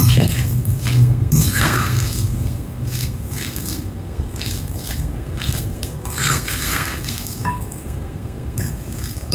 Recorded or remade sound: remade